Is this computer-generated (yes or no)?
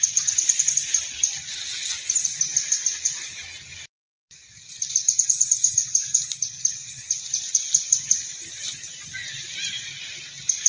no